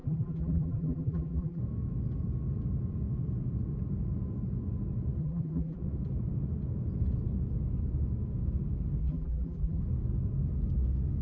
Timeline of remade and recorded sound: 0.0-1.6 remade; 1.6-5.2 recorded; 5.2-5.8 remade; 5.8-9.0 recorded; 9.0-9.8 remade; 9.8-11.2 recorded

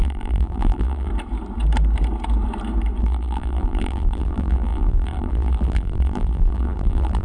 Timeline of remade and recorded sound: 0.0-1.1 remade; 1.1-3.0 recorded; 3.0-7.2 remade

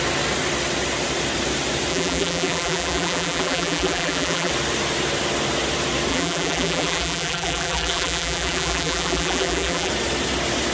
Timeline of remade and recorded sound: 0.0-1.9 recorded; 1.9-4.5 remade; 4.5-6.1 recorded; 6.1-9.9 remade; 9.9-10.7 recorded

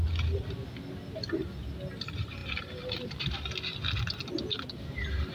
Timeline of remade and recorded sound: 0.0-5.3 recorded